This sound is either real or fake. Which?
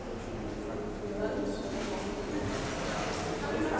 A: real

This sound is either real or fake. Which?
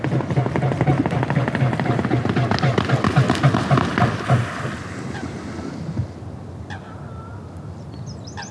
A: real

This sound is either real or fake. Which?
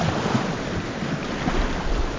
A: real